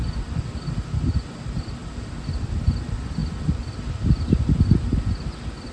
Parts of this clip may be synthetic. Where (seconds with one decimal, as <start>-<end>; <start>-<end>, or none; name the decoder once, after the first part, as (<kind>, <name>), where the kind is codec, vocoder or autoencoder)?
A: none